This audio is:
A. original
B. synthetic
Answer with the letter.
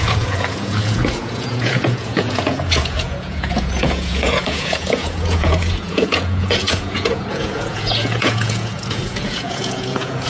B